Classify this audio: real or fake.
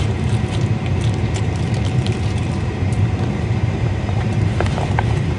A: fake